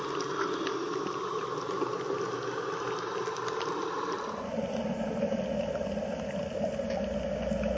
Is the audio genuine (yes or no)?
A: yes